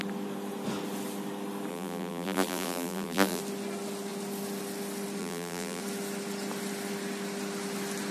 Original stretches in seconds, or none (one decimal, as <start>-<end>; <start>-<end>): 0.0-1.7; 3.4-5.2; 5.8-8.1